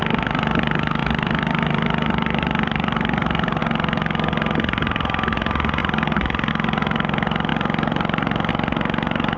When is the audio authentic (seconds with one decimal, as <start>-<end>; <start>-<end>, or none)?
0.0-1.0; 3.6-5.8; 6.5-7.5; 8.5-9.4